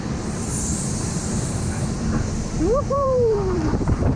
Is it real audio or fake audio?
fake